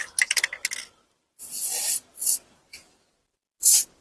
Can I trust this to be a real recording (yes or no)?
yes